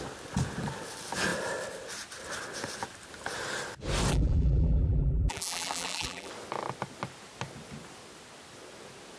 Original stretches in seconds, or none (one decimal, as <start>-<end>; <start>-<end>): 0.0-4.1; 6.3-9.2